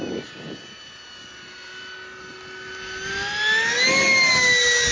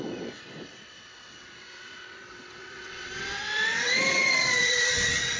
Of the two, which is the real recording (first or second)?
first